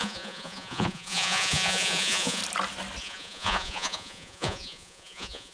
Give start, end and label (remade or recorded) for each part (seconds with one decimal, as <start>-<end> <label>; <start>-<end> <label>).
0.0-2.4 remade; 2.4-3.0 recorded; 3.0-5.5 remade